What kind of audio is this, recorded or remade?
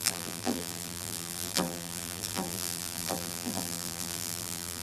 remade